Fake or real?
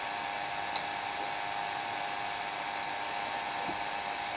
real